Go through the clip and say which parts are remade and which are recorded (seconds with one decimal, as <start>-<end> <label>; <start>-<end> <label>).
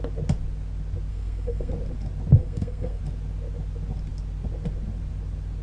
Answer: 0.0-1.1 recorded; 1.1-1.7 remade; 1.7-2.3 recorded; 2.3-3.0 remade; 3.0-5.6 recorded